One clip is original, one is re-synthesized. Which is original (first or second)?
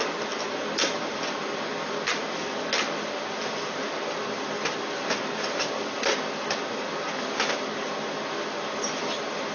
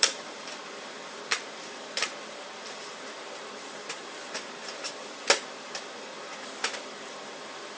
first